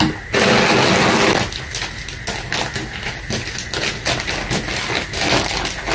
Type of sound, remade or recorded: recorded